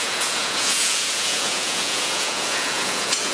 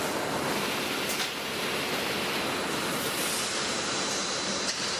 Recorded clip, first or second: second